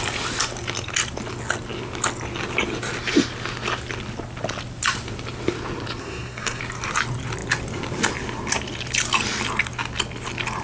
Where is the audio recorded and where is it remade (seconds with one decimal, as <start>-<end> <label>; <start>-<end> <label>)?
0.0-6.0 recorded; 6.0-6.6 remade; 6.6-10.6 recorded